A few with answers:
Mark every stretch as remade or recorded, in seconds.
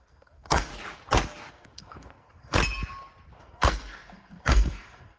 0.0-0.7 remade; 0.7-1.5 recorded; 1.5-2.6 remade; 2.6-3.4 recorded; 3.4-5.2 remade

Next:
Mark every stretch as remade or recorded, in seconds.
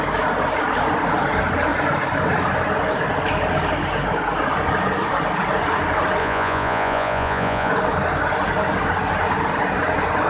0.0-6.2 recorded; 6.2-7.7 remade; 7.7-10.3 recorded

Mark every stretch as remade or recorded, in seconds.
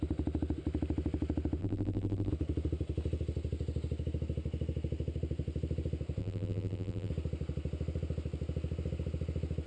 0.0-1.6 recorded; 1.6-2.3 remade; 2.3-6.2 recorded; 6.2-7.1 remade; 7.1-9.7 recorded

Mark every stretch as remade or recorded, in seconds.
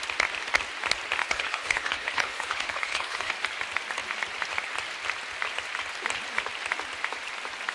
0.0-1.2 recorded; 1.2-3.3 remade; 3.3-7.7 recorded